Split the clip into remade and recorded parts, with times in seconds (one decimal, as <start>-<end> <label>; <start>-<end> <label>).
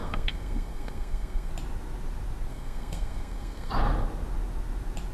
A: 0.0-1.5 remade; 1.5-2.5 recorded; 2.5-3.7 remade; 3.7-5.1 recorded